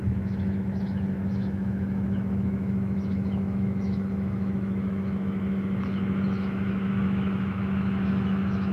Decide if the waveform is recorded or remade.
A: remade